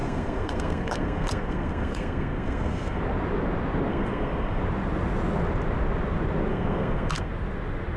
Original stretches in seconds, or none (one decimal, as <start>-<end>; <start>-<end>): 3.0-3.9; 4.6-6.5; 7.3-8.0